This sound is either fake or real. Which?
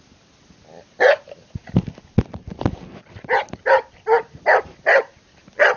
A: real